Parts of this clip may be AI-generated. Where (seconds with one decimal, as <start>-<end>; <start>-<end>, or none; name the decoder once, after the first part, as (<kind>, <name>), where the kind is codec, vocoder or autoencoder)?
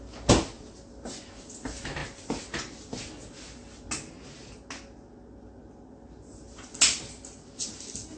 none